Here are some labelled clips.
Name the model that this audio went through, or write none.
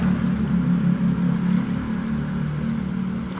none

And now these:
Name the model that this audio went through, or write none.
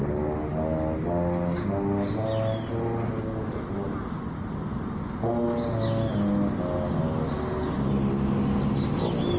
none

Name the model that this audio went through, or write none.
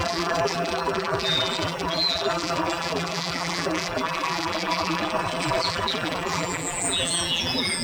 vocoder, BigVGAN v2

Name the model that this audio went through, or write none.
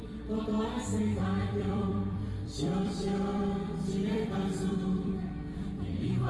vocoder, BigVGAN v2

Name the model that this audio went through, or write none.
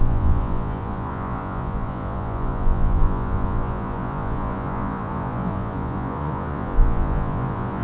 vocoder, Vocos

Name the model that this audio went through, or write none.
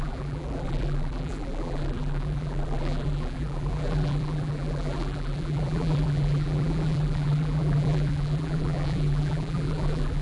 vocoder, BigVGAN v2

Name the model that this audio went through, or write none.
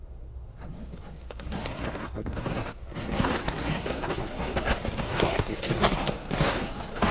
codec, SNAC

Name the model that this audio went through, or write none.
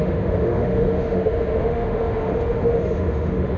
autoencoder, DAC-VAE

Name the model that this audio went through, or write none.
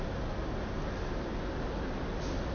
none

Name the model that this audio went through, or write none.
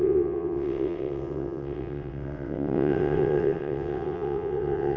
vocoder, WaveNeXt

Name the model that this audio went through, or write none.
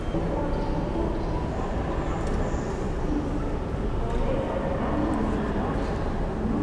none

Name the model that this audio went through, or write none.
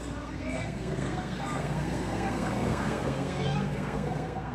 codec, SNAC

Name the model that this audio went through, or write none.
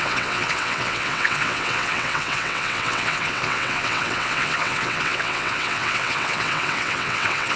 vocoder, WaveNeXt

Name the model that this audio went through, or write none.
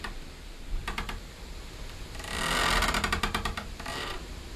none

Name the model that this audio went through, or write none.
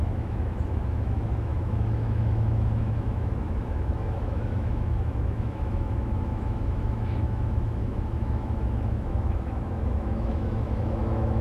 autoencoder, DAC-VAE